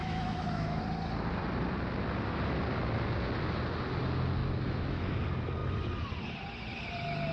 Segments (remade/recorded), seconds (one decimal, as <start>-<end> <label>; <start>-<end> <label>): 0.0-0.8 remade; 0.8-4.4 recorded; 4.4-5.1 remade; 5.1-7.3 recorded